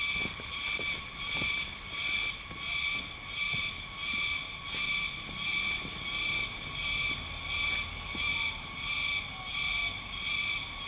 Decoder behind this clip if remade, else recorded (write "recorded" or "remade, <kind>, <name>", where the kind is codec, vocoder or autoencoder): recorded